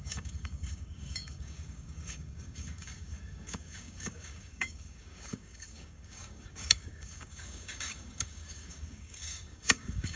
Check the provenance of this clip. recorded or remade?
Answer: remade